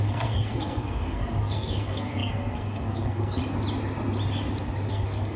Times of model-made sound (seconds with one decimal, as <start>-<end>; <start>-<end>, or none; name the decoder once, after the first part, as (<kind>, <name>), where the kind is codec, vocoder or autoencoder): 0.0-3.4 (codec, SNAC); 4.9-5.4